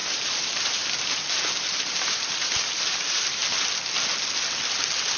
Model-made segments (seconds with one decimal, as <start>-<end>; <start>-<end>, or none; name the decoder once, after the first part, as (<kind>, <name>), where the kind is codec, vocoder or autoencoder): 0.0-3.4 (vocoder, BigVGAN v2)